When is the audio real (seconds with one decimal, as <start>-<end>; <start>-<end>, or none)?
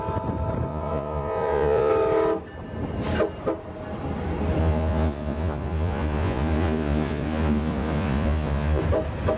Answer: 0.0-0.7; 1.9-4.6; 8.8-9.4